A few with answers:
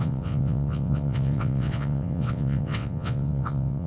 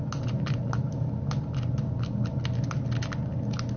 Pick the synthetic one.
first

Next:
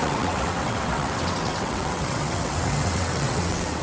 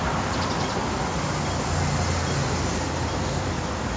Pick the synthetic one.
first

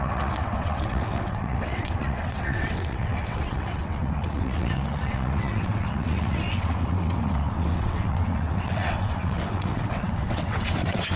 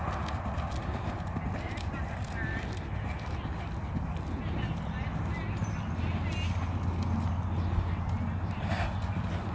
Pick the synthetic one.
first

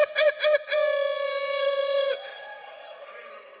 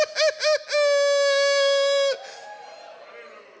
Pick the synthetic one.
first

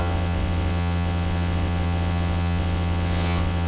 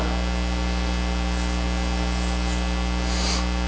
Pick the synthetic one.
first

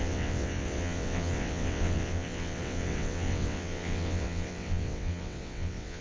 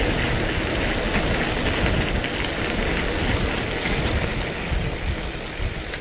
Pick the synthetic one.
first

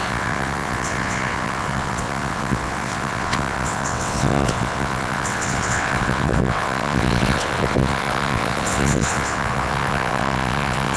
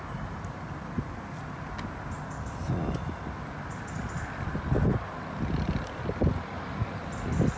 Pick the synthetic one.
first